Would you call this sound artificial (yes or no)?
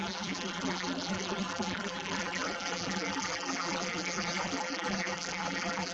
yes